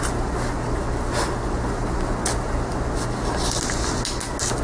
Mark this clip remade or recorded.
recorded